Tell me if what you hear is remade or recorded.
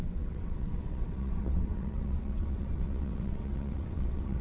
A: remade